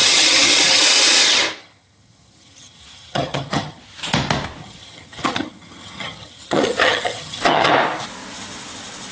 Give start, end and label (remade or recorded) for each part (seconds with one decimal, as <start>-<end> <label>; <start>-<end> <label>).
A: 0.0-0.8 remade; 0.8-1.6 recorded; 1.6-3.8 remade; 3.8-4.6 recorded; 4.6-7.7 remade; 7.7-9.1 recorded